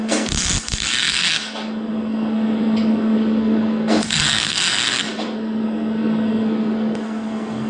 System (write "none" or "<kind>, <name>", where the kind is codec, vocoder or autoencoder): codec, SNAC